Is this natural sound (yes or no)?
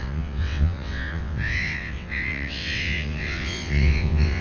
no